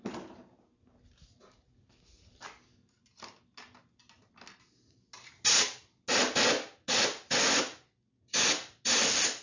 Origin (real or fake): real